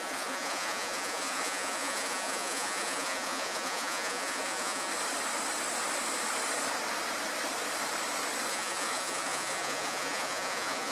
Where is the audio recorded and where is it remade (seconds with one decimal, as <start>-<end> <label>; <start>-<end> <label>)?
0.0-4.9 remade; 4.9-8.5 recorded; 8.5-10.9 remade